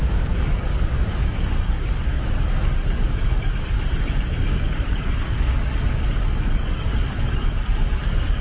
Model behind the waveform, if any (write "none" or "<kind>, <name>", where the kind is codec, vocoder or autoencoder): codec, DAC